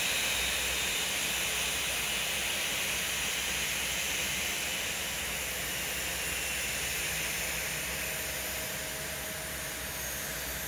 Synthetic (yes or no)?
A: no